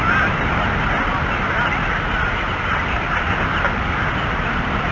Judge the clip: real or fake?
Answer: real